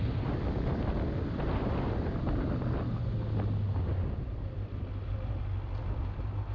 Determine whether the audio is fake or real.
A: real